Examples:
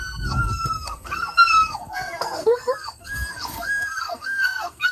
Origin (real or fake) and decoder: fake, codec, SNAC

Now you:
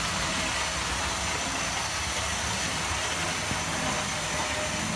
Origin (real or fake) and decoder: real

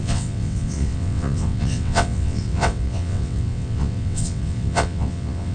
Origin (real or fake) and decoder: fake, vocoder, WaveNeXt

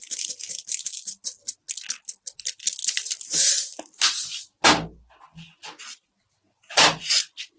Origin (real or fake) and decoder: real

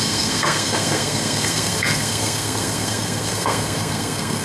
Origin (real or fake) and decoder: fake, codec, SNAC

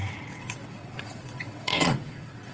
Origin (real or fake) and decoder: fake, vocoder, WaveNeXt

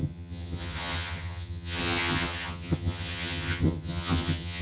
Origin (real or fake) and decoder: fake, vocoder, HiFi-GAN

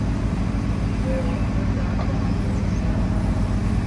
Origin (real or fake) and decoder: real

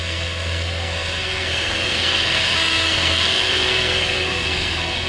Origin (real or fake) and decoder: fake, codec, SNAC